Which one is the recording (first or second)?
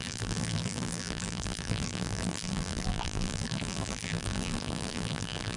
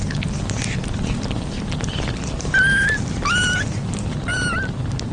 second